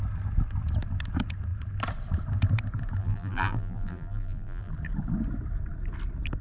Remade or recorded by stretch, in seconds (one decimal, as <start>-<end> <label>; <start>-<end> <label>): 0.0-3.0 recorded; 3.0-4.7 remade; 4.7-6.4 recorded